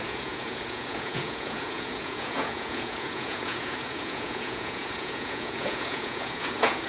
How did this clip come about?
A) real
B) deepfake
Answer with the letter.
B